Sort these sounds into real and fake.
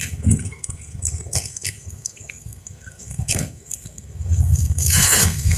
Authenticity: fake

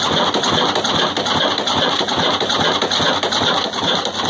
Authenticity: real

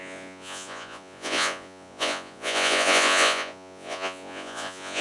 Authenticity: fake